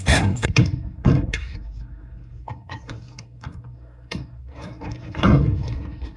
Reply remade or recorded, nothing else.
remade